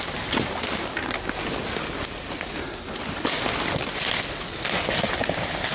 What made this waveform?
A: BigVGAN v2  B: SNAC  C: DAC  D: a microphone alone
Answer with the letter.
D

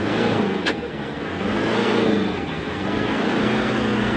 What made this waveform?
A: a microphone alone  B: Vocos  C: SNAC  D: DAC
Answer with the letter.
C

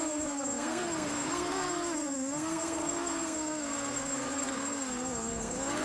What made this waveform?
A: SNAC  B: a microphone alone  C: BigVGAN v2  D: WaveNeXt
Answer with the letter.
A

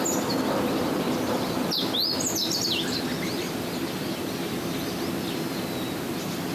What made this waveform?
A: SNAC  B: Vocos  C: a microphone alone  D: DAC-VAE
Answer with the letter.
C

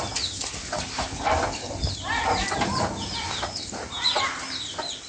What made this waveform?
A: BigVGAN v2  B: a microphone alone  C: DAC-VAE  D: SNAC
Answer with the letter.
B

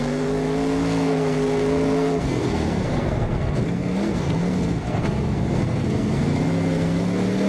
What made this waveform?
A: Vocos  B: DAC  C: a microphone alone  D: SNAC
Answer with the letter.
D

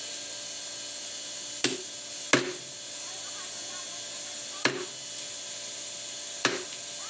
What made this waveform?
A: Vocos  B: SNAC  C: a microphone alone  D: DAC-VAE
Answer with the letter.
C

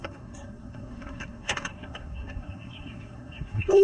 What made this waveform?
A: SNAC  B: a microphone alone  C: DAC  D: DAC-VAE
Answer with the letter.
A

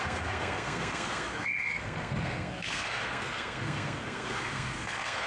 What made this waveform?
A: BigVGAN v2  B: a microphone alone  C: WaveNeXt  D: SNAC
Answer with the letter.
D